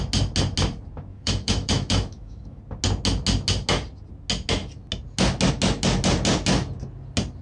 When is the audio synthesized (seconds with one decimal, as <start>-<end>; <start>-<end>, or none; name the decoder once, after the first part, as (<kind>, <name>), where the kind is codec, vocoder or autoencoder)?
1.1-2.6 (autoencoder, DAC-VAE)